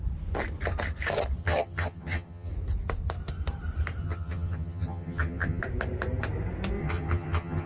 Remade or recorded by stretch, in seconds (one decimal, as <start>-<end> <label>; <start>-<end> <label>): 0.0-1.4 recorded; 1.4-2.5 remade; 2.5-4.0 recorded; 4.0-5.6 remade; 5.6-6.8 recorded; 6.8-7.7 remade